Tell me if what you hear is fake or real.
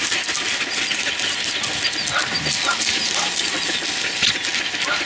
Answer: real